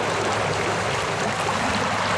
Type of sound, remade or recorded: recorded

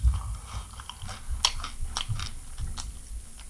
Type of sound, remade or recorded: recorded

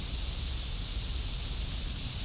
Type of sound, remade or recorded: recorded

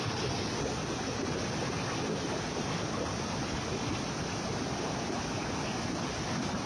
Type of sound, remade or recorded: recorded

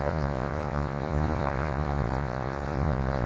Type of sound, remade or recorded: remade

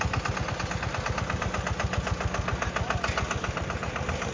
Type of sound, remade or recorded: recorded